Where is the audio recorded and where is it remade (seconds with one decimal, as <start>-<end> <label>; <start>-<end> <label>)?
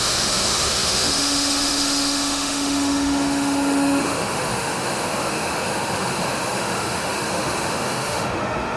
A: 0.0-8.8 remade